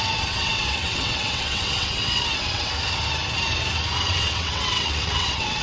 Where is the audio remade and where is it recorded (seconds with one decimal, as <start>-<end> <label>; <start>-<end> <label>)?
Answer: 0.0-2.7 remade; 2.7-4.1 recorded; 4.1-5.6 remade